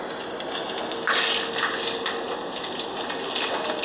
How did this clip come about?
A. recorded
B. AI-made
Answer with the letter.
A